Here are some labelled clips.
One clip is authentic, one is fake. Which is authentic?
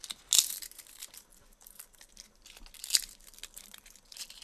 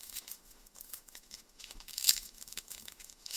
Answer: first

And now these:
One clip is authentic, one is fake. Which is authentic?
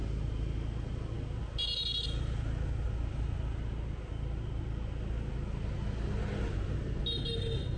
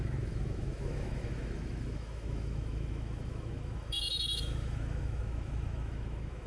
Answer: first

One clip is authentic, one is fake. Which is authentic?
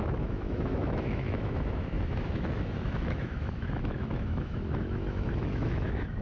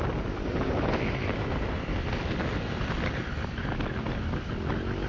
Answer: second